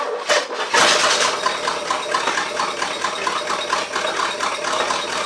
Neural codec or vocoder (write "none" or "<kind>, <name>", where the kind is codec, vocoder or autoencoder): none